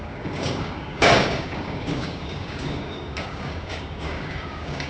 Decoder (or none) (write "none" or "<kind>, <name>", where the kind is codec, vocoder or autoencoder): codec, DAC